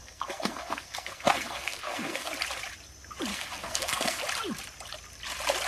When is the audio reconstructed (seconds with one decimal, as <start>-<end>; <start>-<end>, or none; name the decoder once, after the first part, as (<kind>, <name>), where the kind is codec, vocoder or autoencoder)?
0.0-2.3 (codec, SNAC); 3.3-4.2